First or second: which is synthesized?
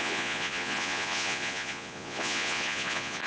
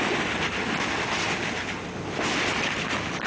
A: first